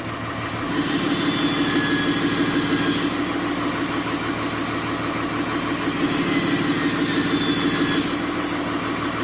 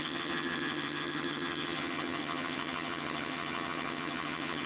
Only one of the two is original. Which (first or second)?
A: first